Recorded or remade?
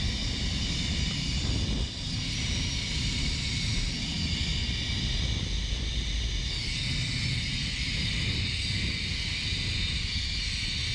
recorded